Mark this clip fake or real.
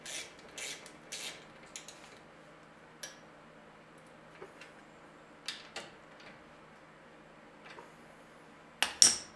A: real